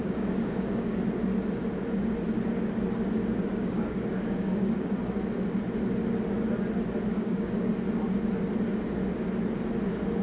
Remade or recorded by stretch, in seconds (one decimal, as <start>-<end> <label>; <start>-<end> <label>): 0.0-1.0 remade; 1.0-3.5 recorded; 3.5-4.9 remade; 4.9-7.1 recorded; 7.1-7.7 remade; 7.7-10.2 recorded